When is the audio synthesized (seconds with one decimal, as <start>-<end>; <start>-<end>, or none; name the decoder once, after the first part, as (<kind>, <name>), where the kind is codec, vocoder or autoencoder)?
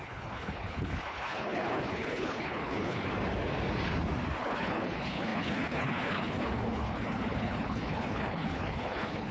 0.0-3.1 (codec, HILCodec); 4.4-9.3